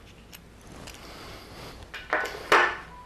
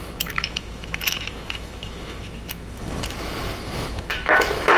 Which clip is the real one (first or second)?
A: first